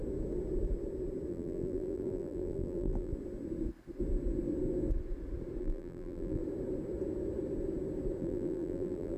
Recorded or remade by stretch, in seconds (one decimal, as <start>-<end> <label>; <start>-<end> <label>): 0.0-1.3 recorded; 1.3-3.1 remade; 3.1-5.6 recorded; 5.6-6.4 remade; 6.4-8.2 recorded; 8.2-9.2 remade